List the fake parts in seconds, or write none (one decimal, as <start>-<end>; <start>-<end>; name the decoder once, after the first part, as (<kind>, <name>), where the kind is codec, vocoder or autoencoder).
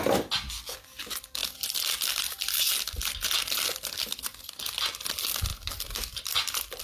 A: none